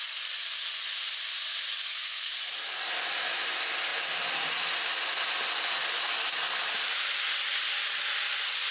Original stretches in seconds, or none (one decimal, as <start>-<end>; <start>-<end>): 0.0-1.8; 2.3-8.7